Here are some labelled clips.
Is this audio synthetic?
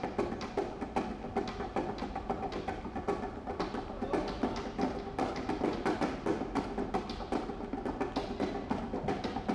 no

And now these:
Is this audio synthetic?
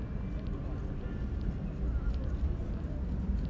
no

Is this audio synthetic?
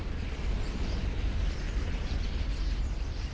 no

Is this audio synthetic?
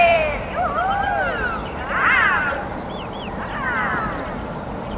yes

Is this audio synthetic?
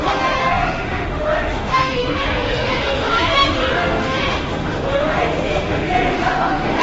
yes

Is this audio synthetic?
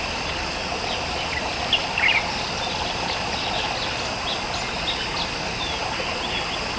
no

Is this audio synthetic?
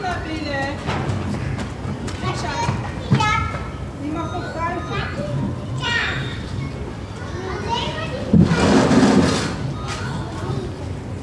no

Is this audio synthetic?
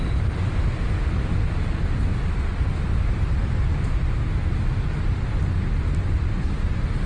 no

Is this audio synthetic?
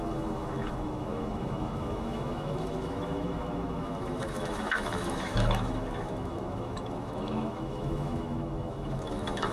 yes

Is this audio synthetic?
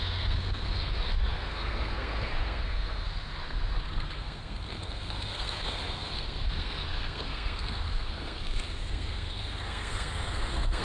yes